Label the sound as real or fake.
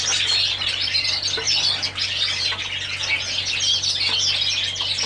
real